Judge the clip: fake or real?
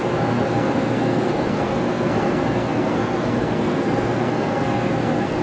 fake